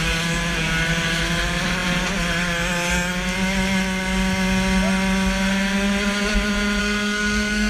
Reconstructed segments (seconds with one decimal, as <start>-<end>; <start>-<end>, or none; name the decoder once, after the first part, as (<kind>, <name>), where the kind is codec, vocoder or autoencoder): 6.8-7.7 (codec, SNAC)